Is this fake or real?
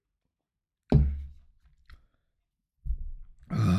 real